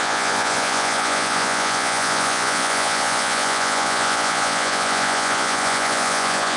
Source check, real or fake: fake